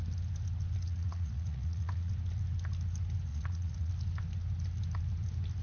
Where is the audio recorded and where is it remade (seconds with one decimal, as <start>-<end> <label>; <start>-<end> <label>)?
0.0-0.8 recorded; 0.8-2.1 remade; 2.1-3.3 recorded; 3.3-3.9 remade; 3.9-5.6 recorded